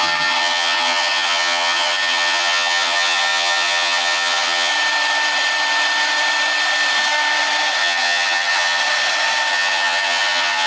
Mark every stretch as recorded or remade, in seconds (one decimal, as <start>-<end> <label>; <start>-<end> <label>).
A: 0.0-4.7 remade; 4.7-7.8 recorded; 7.8-8.8 remade; 8.8-9.5 recorded; 9.5-10.7 remade